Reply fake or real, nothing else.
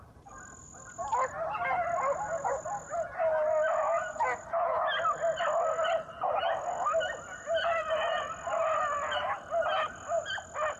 real